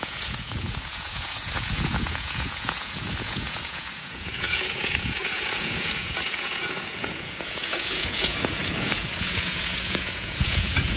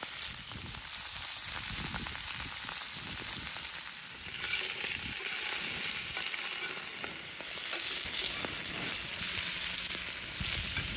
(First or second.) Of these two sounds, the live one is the second